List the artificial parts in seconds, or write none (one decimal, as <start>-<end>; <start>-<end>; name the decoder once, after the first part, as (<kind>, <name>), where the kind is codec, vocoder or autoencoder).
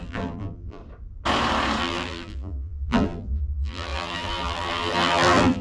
0.0-0.8 (vocoder, BigVGAN v2); 1.8-5.6